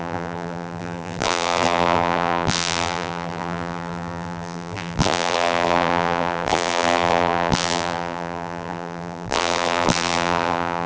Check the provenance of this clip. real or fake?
fake